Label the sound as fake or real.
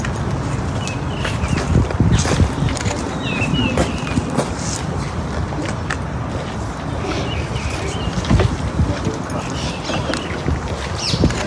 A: real